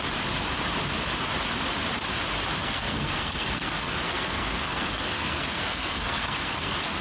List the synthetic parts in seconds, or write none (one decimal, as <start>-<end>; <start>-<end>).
2.6-7.0